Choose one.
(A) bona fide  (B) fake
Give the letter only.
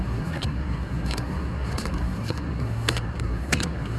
B